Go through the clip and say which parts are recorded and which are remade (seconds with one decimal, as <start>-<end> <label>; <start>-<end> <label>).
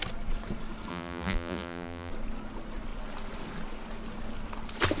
0.0-0.9 recorded; 0.9-2.1 remade; 2.1-5.0 recorded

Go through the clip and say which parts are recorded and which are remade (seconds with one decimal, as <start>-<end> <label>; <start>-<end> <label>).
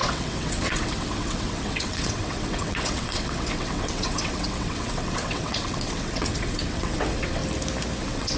0.0-7.4 remade; 7.4-8.0 recorded; 8.0-8.4 remade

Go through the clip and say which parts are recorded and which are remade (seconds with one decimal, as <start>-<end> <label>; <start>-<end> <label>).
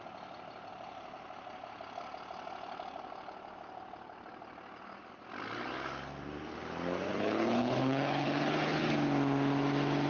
0.0-7.1 recorded; 7.1-8.8 remade; 8.8-10.1 recorded